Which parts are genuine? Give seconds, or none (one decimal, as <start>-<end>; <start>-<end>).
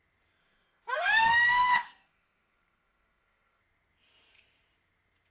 0.0-0.4; 3.6-5.3